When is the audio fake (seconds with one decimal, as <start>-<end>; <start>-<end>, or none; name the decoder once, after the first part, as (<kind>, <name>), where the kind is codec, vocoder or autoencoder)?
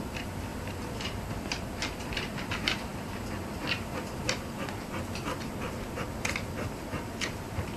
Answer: none